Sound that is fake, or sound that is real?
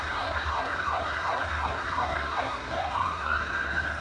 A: fake